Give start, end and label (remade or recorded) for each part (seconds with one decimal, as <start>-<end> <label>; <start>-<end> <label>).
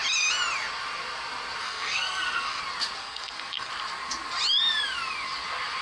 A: 0.0-1.6 recorded; 1.6-2.6 remade; 2.6-3.0 recorded; 3.0-3.7 remade; 3.7-5.8 recorded